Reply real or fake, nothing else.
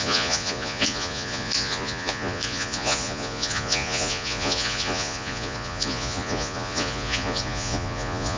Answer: fake